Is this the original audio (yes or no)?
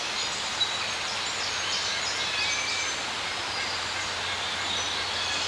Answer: yes